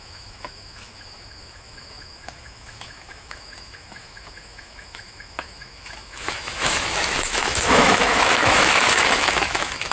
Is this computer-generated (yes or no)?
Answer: yes